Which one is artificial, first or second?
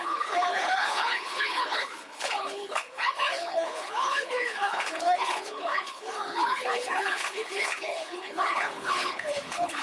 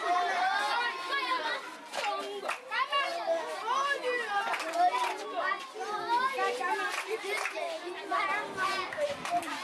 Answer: first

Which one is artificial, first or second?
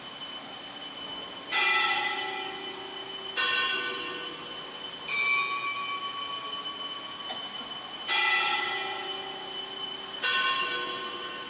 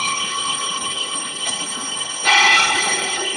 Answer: second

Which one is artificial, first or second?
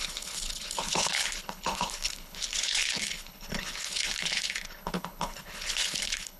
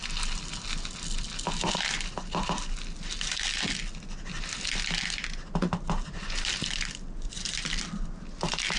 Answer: first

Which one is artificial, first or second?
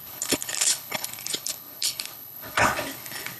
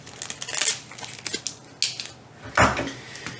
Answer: first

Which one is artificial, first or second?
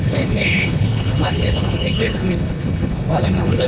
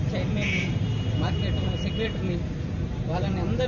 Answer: first